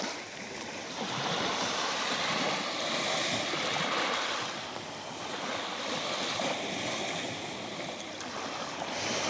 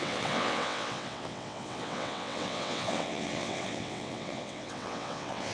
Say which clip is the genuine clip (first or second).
first